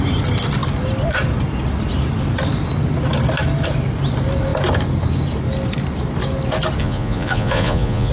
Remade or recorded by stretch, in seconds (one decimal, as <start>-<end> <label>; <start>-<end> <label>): 0.0-6.8 recorded; 6.8-8.1 remade